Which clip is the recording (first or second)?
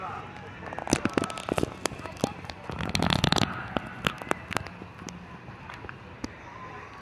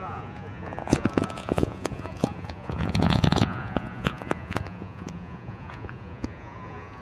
first